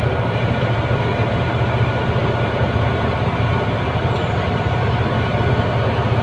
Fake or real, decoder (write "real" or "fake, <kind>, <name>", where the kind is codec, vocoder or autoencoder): real